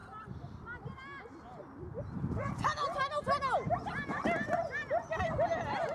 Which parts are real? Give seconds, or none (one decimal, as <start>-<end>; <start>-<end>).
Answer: 0.0-1.6; 3.0-5.2